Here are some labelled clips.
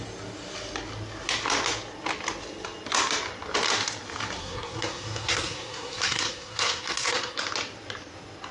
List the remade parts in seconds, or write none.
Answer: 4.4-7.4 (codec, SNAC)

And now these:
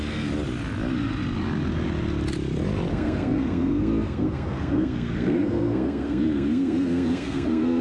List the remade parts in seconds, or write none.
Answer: 2.9-7.8 (codec, SNAC)

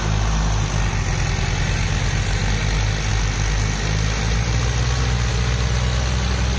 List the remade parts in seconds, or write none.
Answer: none